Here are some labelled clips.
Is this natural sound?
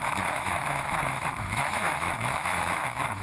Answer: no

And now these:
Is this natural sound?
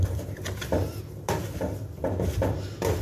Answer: yes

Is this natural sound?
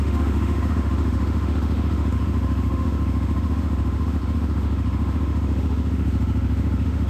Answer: no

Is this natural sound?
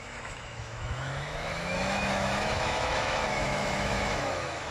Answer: no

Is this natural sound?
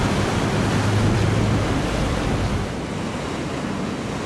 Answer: yes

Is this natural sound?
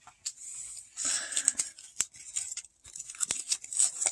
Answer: yes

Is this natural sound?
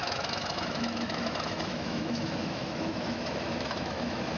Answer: no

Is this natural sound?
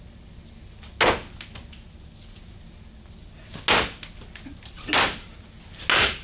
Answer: yes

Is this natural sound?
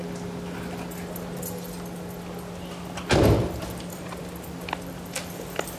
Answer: yes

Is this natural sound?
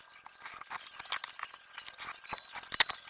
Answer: yes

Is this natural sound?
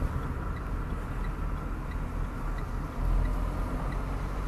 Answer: yes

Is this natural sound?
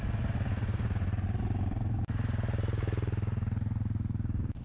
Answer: yes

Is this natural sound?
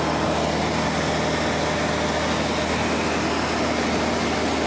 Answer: yes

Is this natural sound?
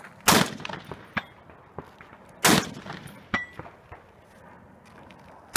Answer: yes